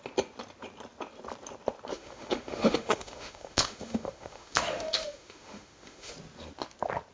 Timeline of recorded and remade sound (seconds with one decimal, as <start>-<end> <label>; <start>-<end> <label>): 0.0-1.9 recorded; 1.9-6.1 remade; 6.1-7.1 recorded